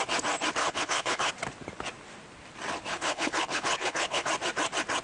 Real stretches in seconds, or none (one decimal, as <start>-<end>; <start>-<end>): 0.0-0.6; 1.3-2.9; 4.3-5.0